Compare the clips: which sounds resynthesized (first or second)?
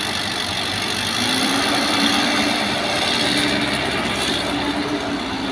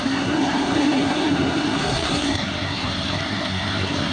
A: second